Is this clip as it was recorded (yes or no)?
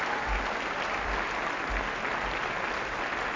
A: yes